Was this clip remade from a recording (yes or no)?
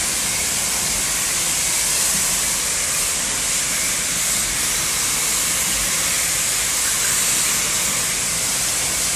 yes